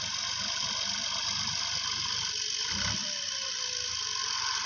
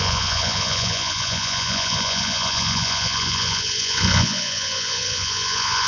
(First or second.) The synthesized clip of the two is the second